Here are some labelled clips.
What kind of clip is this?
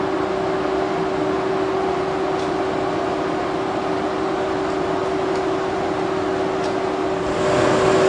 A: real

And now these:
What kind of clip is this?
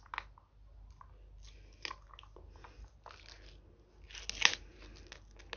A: real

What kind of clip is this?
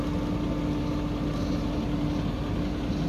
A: real